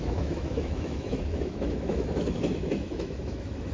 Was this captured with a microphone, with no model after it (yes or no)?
no